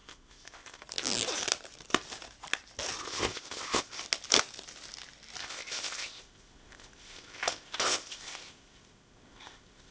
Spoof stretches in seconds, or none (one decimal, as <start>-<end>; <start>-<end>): 0.0-0.8; 3.0-4.0; 5.4-9.9